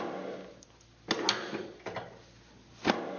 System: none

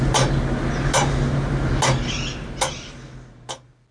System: none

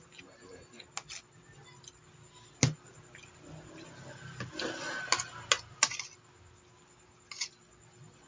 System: none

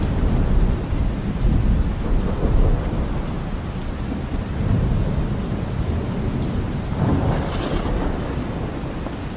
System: none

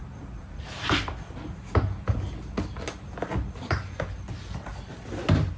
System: none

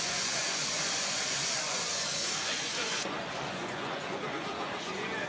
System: vocoder, Vocos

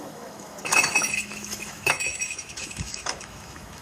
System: autoencoder, DAC-VAE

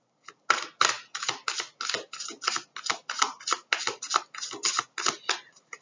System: none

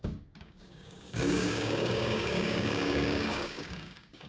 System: codec, DAC